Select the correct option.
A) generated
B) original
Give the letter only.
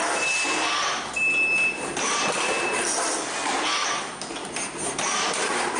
B